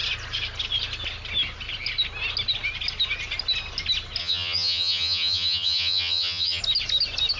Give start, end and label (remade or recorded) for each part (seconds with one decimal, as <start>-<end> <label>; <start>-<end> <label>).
0.0-4.2 recorded; 4.2-6.6 remade; 6.6-7.4 recorded